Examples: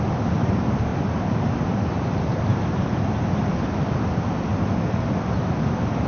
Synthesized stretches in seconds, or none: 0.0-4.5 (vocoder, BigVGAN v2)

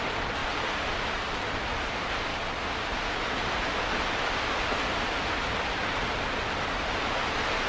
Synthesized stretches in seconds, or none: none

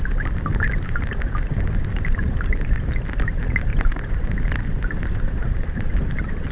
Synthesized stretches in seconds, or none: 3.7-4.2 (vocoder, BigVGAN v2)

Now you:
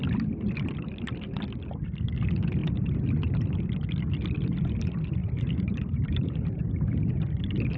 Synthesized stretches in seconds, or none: 5.2-6.6 (vocoder, BigVGAN v2)

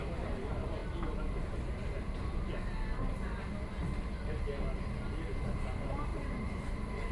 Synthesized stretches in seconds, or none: 6.1-7.1 (vocoder, BigVGAN v2)

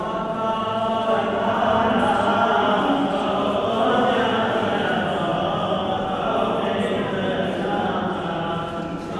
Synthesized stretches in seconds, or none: none